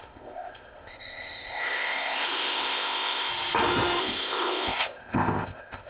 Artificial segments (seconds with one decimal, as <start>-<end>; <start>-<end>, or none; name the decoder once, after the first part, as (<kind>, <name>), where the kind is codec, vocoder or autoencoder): 0.0-3.3 (codec, ZipCodec); 4.0-5.9